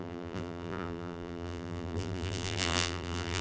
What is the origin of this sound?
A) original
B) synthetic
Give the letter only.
B